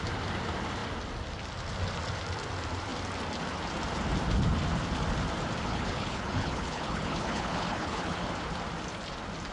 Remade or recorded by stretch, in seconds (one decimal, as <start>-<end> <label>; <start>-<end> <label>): 0.0-5.7 recorded; 5.7-8.3 remade; 8.3-9.5 recorded